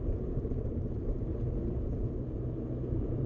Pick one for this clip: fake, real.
fake